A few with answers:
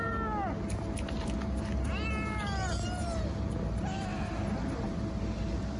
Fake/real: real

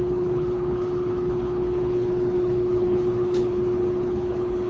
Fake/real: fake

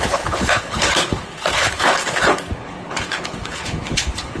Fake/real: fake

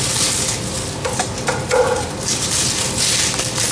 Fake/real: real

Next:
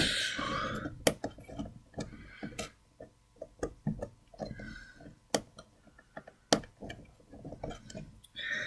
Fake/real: real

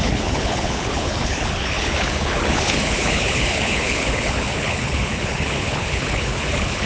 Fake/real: fake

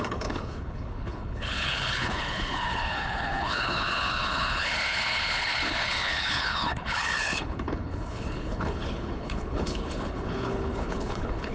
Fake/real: fake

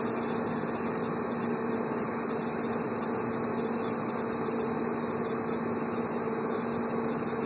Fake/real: real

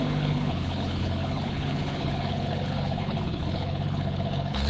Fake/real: fake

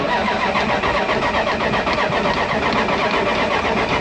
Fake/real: real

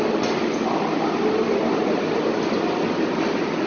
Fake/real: real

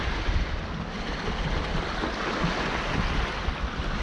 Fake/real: real